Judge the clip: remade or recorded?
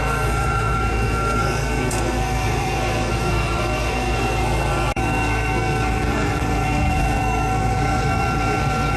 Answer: remade